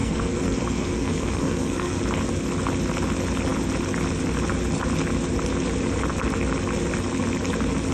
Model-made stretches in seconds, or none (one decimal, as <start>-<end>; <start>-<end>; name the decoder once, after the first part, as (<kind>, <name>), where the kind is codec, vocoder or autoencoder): 0.0-2.0 (codec, SNAC)